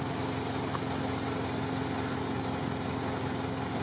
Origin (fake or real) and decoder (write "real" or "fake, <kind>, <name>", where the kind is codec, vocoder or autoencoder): real